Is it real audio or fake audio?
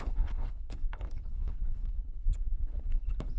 fake